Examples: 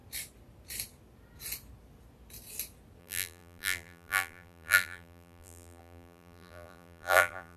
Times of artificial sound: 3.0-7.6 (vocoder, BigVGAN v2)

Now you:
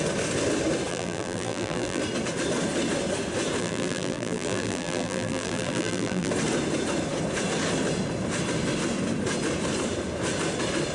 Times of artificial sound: 0.9-2.0 (vocoder, BigVGAN v2); 3.6-6.3

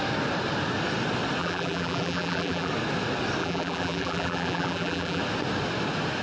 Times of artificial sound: 1.4-2.7 (vocoder, BigVGAN v2); 3.4-5.2

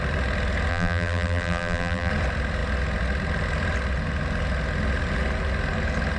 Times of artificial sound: 0.7-2.1 (vocoder, BigVGAN v2)

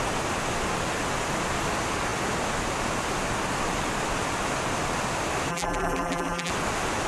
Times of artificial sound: 5.5-6.5 (vocoder, BigVGAN v2)

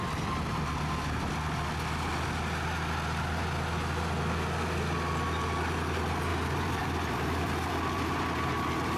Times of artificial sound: 6.3-9.0 (vocoder, BigVGAN v2)